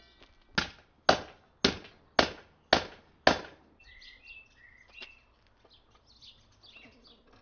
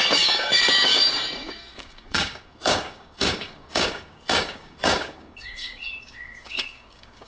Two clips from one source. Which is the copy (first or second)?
second